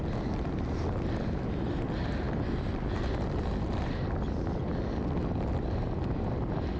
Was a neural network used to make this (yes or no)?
no